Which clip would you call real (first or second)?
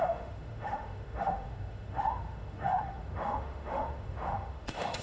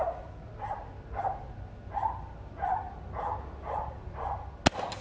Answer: second